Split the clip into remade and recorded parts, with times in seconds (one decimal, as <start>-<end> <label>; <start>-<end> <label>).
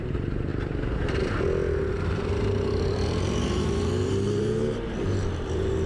0.0-0.5 remade; 0.5-1.9 recorded; 1.9-5.9 remade